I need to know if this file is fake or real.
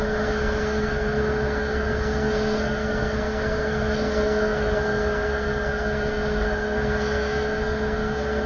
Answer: fake